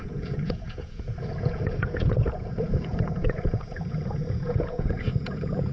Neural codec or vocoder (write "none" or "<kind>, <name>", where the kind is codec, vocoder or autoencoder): vocoder, Vocos